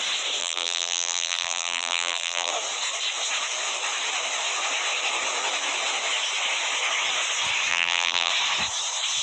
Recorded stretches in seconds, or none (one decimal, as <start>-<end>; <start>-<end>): 0.0-0.4; 2.5-7.7; 8.3-9.2